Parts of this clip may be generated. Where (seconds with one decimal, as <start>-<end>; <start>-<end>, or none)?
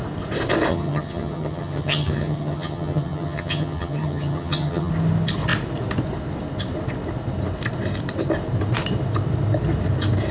0.7-4.9